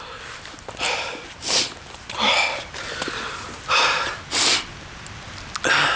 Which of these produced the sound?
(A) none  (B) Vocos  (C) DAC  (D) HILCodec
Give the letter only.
A